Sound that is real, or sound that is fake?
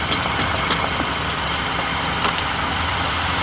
real